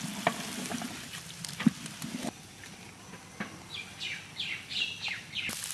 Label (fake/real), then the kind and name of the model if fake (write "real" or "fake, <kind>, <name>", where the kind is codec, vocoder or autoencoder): real